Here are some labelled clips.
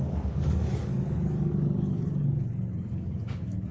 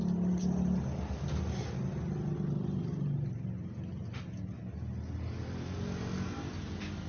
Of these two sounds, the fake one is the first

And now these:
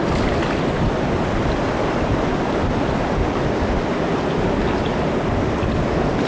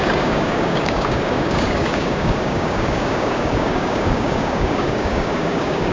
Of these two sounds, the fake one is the second